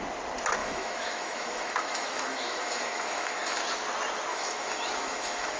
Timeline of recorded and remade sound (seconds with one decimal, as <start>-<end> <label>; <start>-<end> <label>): 0.0-0.6 recorded; 0.6-3.6 remade; 3.6-4.3 recorded; 4.3-5.6 remade